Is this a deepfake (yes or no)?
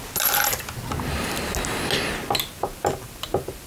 no